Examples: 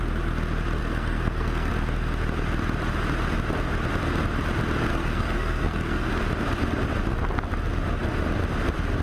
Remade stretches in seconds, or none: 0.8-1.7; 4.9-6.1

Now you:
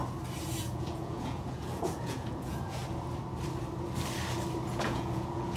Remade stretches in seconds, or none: 0.6-2.8; 4.7-5.6

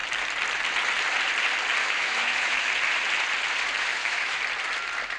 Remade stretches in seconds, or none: 1.8-2.7; 3.9-4.4

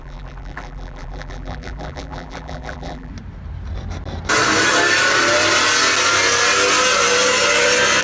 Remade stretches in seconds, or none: 0.0-3.1

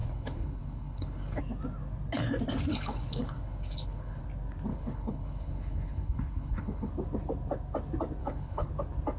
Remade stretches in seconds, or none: 0.0-1.4; 2.7-4.2; 4.7-6.9; 8.2-8.7

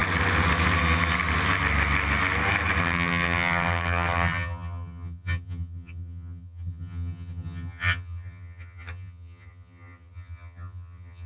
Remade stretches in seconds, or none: 2.8-11.3